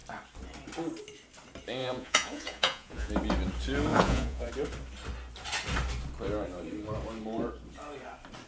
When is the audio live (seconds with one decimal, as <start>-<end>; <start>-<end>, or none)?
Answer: 0.0-1.8; 3.1-3.9; 4.5-8.5